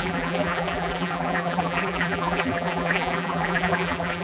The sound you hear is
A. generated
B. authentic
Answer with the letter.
A